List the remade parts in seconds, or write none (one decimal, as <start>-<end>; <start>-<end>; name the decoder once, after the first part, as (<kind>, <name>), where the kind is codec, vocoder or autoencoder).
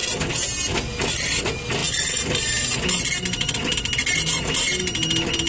none